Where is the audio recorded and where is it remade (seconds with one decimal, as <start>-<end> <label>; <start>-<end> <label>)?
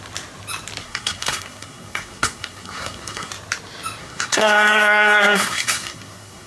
0.0-0.8 recorded; 0.8-3.3 remade; 3.3-4.0 recorded; 4.0-6.5 remade